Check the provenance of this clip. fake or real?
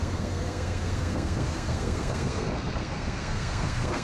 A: fake